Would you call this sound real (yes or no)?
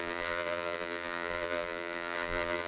no